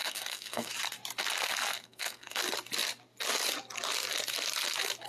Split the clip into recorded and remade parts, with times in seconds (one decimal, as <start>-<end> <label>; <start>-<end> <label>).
0.0-0.7 remade; 0.7-1.8 recorded; 1.8-2.4 remade; 2.4-5.1 recorded